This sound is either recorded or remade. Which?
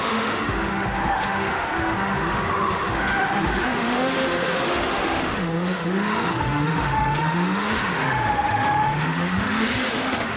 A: remade